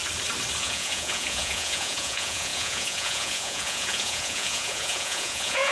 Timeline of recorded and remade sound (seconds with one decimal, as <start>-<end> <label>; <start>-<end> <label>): 0.0-0.6 recorded; 0.6-5.7 remade